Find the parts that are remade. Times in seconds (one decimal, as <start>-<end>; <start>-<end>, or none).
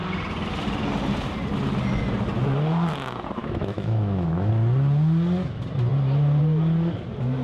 3.4-4.5